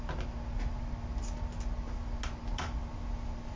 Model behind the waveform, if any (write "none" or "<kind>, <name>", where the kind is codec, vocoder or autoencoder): none